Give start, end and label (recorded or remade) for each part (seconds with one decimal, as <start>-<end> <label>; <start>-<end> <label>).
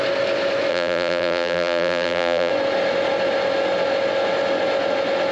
0.0-0.7 recorded; 0.7-2.5 remade; 2.5-5.3 recorded